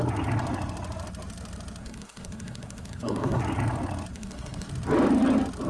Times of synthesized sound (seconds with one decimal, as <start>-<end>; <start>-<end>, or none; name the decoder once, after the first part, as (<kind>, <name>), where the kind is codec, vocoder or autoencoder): 1.8-3.4 (codec, SNAC); 4.1-4.7